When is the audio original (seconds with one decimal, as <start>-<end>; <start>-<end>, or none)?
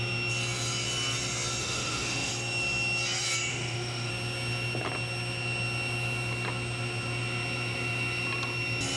0.0-1.6; 2.3-3.5; 4.1-9.0